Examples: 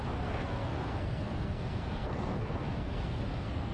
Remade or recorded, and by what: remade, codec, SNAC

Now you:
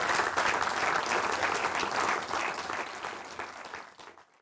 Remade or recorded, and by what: recorded